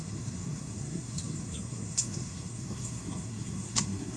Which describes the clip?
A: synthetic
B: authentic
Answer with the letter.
A